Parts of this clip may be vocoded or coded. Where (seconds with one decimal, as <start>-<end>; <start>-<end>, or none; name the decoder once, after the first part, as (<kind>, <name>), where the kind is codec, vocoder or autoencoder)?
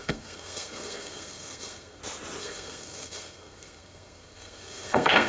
0.0-2.0 (codec, SNAC); 2.4-5.3